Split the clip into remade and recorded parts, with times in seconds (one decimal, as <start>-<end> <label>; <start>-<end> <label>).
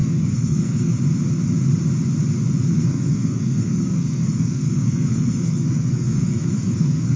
0.0-0.9 remade; 0.9-2.7 recorded; 2.7-7.2 remade